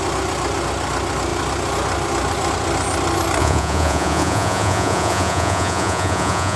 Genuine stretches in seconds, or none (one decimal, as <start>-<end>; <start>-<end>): 0.0-3.4